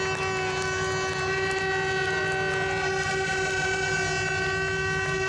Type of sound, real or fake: real